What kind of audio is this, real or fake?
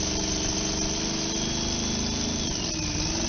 real